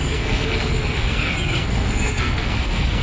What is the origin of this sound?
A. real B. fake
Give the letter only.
B